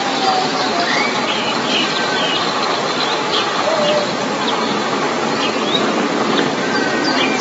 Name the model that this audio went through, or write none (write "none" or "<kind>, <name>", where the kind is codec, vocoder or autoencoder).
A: none